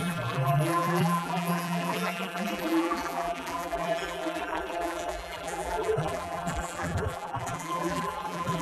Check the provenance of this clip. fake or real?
fake